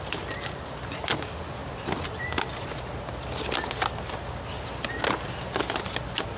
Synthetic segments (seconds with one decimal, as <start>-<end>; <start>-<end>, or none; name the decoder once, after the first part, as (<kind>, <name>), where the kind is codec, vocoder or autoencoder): none